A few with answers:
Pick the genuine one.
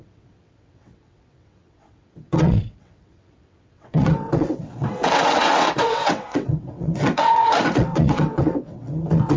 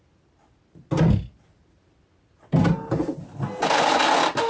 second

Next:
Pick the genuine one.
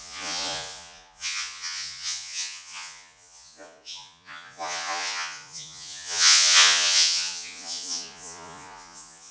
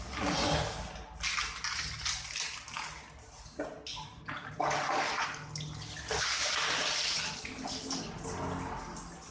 second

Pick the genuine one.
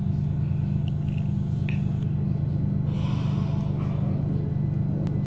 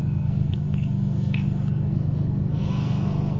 first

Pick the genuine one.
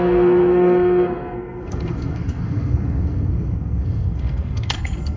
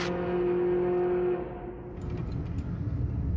second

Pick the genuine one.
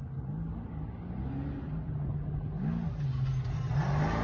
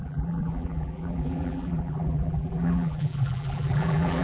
first